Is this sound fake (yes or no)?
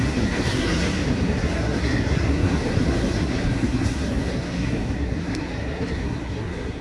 yes